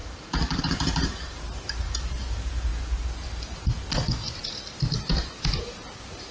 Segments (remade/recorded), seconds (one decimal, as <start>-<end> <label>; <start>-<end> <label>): 0.0-2.7 remade; 2.7-4.4 recorded; 4.4-6.3 remade

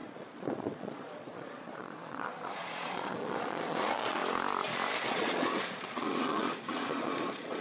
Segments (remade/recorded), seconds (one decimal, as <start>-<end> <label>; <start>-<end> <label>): 0.0-4.2 remade; 4.2-5.1 recorded; 5.1-7.6 remade

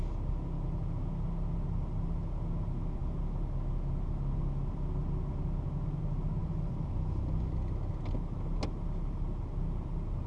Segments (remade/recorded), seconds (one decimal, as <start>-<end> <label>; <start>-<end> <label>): 0.0-6.4 recorded; 6.4-7.2 remade; 7.2-10.3 recorded

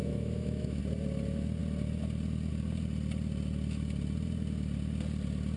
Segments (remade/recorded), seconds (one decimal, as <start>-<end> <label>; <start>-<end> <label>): 0.0-0.8 remade; 0.8-5.6 recorded

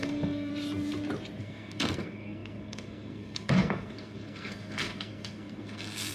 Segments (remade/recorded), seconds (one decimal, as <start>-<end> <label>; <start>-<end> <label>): 0.0-0.5 remade; 0.5-1.4 recorded; 1.4-6.1 remade

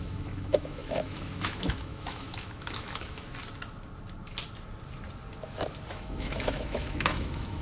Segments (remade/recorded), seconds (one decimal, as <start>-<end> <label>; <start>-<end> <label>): 0.0-3.3 remade; 3.3-5.9 recorded; 5.9-7.6 remade

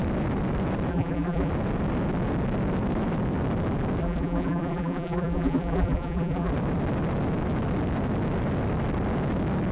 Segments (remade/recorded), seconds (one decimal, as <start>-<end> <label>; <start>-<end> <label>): 0.0-0.9 recorded; 0.9-1.5 remade; 1.5-4.0 recorded; 4.0-6.5 remade; 6.5-9.7 recorded